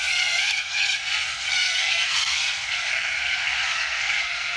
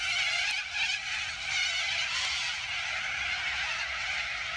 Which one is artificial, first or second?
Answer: first